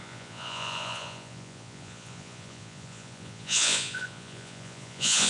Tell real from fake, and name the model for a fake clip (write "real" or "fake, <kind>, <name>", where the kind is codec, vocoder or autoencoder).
fake, vocoder, Vocos